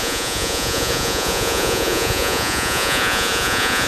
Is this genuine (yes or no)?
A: no